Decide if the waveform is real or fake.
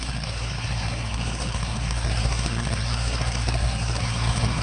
fake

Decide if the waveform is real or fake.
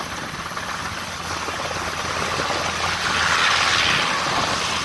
real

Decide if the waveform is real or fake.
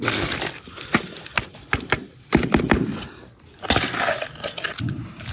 real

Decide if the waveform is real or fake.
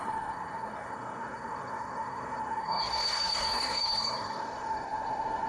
fake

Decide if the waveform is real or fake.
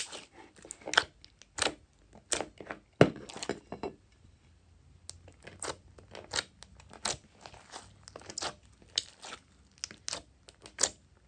real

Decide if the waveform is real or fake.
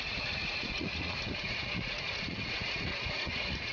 fake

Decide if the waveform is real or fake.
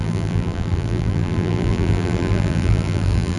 fake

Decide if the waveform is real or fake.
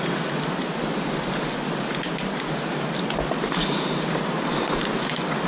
real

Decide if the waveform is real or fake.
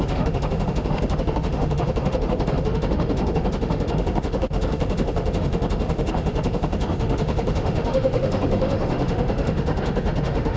fake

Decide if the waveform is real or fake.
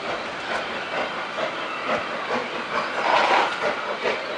real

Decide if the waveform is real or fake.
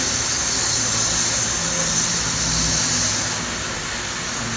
real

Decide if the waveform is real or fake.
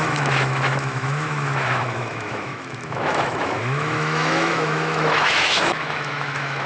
fake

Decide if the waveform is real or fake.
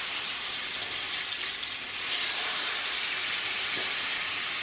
real